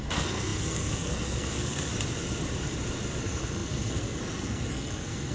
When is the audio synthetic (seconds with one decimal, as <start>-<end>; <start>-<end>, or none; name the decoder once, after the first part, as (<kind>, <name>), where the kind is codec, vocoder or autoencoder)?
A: 0.0-1.9 (codec, SNAC); 3.2-5.3

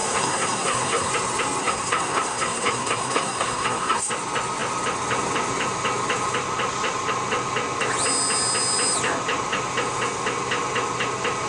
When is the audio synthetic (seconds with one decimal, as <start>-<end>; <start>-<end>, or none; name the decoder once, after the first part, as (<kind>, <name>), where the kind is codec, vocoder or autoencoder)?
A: 0.0-1.1 (codec, SNAC); 1.6-4.1

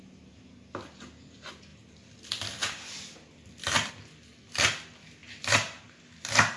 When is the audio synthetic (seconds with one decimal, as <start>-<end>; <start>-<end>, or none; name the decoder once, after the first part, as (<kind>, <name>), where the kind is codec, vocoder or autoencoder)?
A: 1.7-3.9 (vocoder, BigVGAN v2); 5.2-6.0

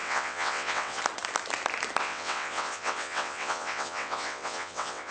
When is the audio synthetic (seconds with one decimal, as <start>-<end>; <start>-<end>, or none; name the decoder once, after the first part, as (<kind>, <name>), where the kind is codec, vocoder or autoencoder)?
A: 0.0-1.0 (vocoder, WaveNeXt); 2.0-5.1